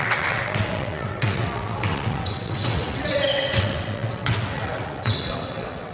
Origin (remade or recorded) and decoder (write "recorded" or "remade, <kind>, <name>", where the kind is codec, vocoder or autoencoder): remade, vocoder, WaveNeXt